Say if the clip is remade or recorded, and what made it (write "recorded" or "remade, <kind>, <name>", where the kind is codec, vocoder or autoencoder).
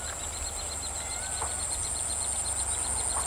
recorded